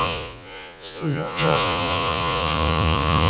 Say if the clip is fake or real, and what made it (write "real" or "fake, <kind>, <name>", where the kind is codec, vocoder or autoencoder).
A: fake, vocoder, Vocos